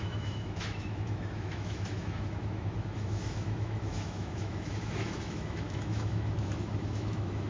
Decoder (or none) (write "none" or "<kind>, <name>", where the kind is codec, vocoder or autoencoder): autoencoder, DAC-VAE